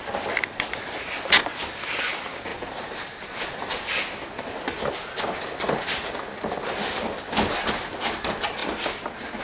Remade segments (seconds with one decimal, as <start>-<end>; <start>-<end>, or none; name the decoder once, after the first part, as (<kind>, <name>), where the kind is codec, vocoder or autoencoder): 2.5-3.4 (vocoder, BigVGAN v2)